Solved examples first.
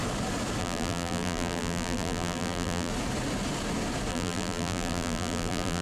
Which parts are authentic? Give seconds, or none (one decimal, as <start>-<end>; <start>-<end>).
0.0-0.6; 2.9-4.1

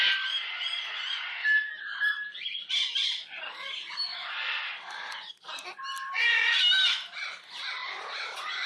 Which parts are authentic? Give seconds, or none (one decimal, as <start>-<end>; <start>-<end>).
0.0-8.7

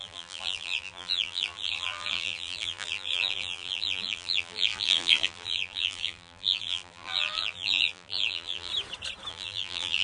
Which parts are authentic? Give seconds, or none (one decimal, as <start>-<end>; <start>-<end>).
8.7-9.3

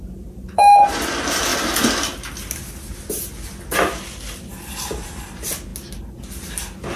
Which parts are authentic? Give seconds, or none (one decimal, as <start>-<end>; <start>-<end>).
1.5-5.0; 5.7-7.0

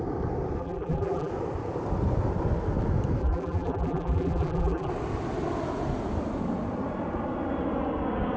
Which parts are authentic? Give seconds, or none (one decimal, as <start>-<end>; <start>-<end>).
0.0-0.6; 1.3-3.2; 4.9-8.4

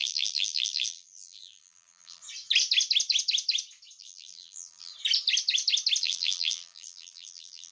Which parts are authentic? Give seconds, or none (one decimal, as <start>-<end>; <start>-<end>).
2.2-4.0; 4.9-6.0